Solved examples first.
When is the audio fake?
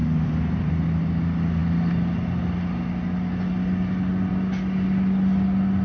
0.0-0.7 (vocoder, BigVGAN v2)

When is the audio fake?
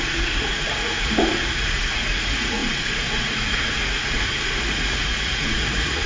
0.0-6.1 (vocoder, Vocos)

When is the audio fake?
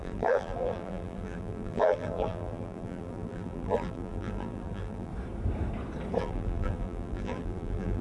0.0-5.1 (vocoder, BigVGAN v2); 6.2-8.0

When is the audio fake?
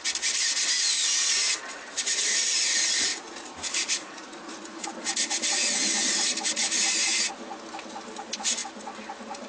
3.1-4.5 (vocoder, Vocos)